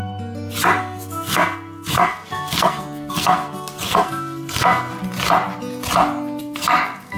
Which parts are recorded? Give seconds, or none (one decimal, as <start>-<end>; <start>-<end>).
0.0-0.8; 4.9-6.4